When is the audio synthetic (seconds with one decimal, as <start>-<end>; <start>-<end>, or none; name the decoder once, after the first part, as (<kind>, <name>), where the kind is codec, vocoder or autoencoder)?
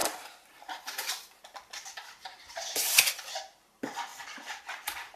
4.1-4.6 (vocoder, BigVGAN v2)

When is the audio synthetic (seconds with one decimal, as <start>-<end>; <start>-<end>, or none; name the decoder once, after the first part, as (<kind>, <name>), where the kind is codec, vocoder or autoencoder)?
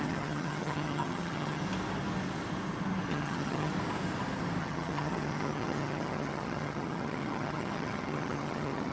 0.0-1.6 (vocoder, HiFi-GAN); 3.1-3.7; 4.6-8.9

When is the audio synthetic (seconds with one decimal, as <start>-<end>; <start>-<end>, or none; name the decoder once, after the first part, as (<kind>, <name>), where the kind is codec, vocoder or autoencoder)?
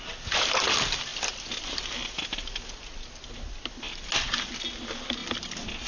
none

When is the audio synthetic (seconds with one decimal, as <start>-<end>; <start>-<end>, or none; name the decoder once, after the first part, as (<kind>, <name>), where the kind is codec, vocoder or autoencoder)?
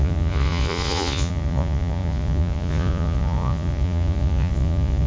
0.0-5.1 (vocoder, Vocos)